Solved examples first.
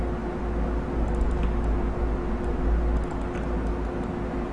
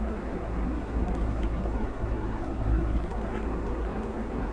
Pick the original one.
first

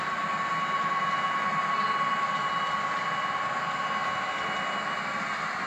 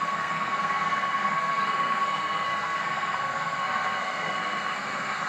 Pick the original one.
first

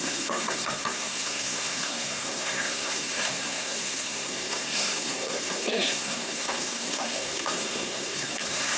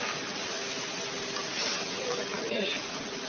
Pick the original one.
second